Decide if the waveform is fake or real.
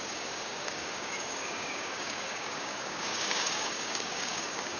fake